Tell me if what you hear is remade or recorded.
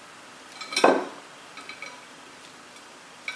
recorded